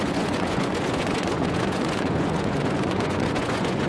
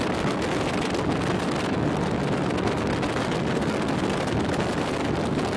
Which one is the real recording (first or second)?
second